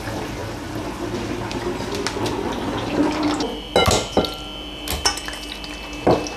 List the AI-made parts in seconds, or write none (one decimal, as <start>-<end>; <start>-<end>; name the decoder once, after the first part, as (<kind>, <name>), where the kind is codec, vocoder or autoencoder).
none